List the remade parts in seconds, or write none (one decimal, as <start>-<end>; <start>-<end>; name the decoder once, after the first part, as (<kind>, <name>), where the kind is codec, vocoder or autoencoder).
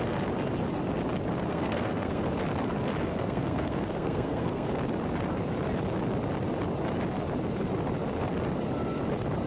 1.5-2.2 (codec, SNAC); 3.1-4.7